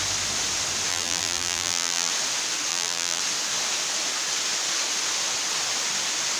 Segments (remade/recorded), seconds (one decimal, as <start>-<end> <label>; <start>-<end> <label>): 0.0-0.9 recorded; 0.9-2.1 remade; 2.1-2.7 recorded; 2.7-3.2 remade; 3.2-6.4 recorded